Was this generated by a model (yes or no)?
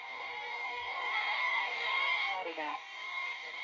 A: yes